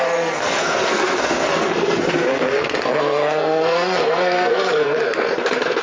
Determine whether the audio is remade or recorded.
remade